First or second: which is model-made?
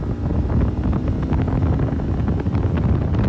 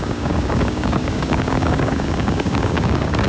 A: second